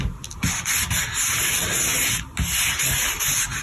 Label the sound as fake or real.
real